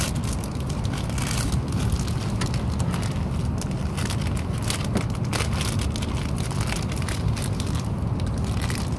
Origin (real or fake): real